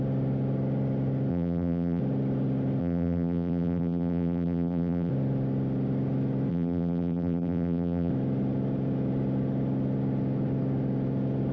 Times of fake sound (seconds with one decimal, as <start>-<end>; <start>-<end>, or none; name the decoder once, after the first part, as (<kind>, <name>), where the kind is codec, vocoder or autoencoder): 1.3-2.0 (vocoder, BigVGAN v2); 2.8-5.1; 6.5-8.1